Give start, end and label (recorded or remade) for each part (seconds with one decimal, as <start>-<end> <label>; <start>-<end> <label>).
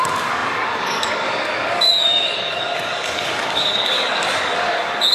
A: 0.0-5.1 remade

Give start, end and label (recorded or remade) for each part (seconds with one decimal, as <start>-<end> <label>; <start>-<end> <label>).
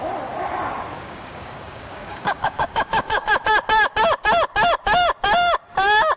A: 0.0-0.9 recorded; 0.9-3.3 remade; 3.3-6.2 recorded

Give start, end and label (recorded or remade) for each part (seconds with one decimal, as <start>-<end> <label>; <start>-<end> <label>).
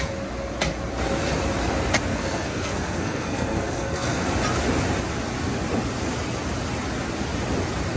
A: 0.0-2.1 recorded; 2.1-4.3 remade; 4.3-8.0 recorded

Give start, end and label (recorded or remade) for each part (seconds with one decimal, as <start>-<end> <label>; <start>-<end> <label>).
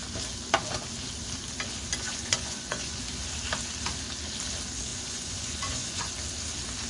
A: 0.0-1.9 recorded; 1.9-3.0 remade; 3.0-4.9 recorded; 4.9-6.1 remade; 6.1-6.9 recorded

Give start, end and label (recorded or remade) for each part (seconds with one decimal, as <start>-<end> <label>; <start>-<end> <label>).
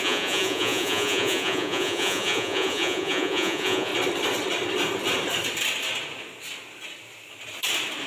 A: 0.0-3.9 remade; 3.9-8.1 recorded